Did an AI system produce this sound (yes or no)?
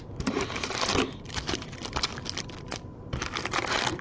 yes